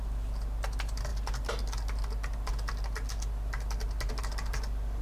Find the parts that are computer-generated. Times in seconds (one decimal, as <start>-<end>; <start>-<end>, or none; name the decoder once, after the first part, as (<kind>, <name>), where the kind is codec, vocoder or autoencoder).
none